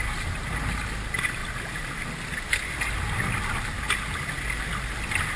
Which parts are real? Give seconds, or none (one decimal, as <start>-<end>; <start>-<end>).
0.0-5.4